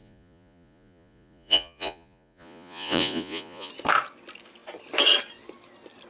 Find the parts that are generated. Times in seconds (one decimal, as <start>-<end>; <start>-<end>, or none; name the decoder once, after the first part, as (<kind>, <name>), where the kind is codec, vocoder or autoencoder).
0.0-3.7 (vocoder, Vocos)